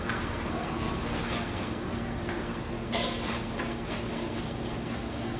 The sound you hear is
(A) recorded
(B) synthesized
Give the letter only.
B